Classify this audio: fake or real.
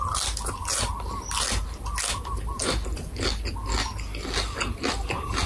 real